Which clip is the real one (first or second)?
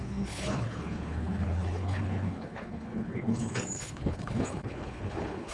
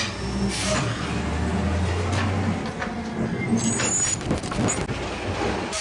second